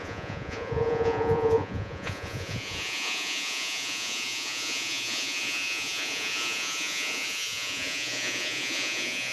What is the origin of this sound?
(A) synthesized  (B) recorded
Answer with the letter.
A